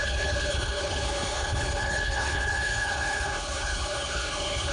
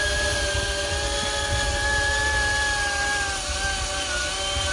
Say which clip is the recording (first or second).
second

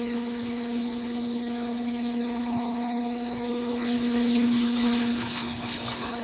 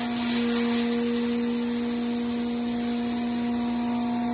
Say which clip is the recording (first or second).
second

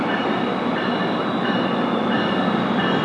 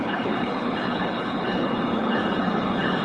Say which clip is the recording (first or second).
first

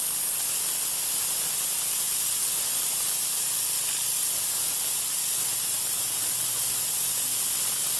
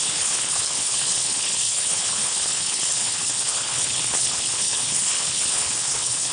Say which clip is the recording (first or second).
first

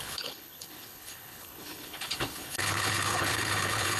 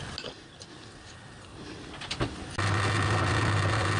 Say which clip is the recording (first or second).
second